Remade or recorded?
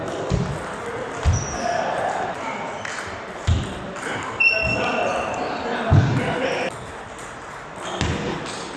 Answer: remade